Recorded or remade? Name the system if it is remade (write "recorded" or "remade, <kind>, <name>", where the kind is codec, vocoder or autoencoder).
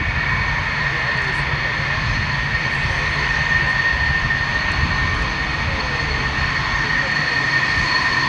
recorded